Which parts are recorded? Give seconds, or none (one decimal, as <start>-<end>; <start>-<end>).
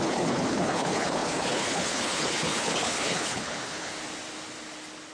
3.9-5.1